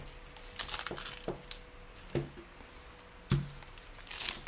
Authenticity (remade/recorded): recorded